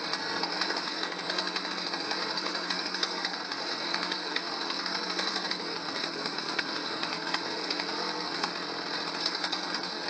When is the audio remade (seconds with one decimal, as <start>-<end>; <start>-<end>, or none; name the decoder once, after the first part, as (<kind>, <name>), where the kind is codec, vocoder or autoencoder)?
0.0-8.5 (codec, SNAC); 9.2-10.1